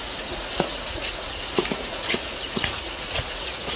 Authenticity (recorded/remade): remade